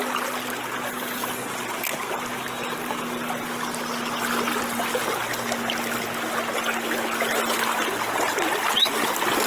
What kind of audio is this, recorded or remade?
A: recorded